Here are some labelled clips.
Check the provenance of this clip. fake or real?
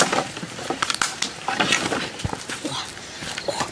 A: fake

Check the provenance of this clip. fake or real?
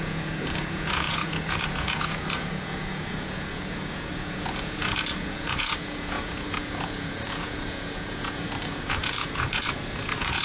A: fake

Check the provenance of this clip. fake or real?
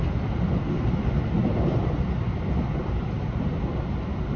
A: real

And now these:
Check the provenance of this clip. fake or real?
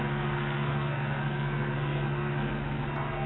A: fake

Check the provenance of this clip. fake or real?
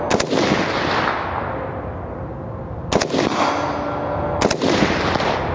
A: real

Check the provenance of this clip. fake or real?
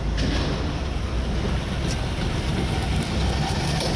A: real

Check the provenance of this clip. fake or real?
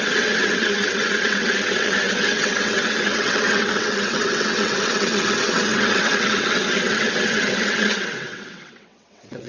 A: fake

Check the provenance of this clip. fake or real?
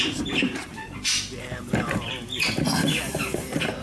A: fake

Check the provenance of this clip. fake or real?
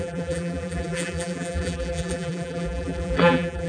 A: fake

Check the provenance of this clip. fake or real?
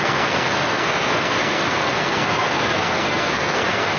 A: fake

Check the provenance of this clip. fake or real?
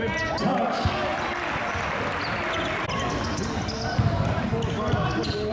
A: real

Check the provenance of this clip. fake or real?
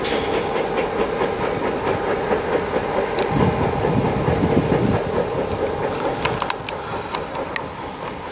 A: real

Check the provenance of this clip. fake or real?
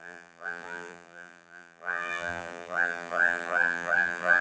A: fake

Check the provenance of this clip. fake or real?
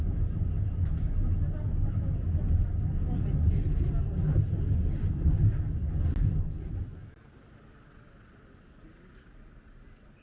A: real